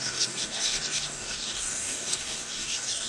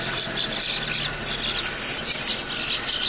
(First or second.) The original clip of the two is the second